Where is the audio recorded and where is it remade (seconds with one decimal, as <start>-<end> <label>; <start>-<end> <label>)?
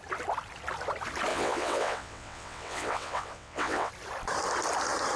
0.0-1.3 recorded; 1.3-3.9 remade; 3.9-5.2 recorded